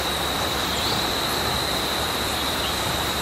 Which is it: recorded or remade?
remade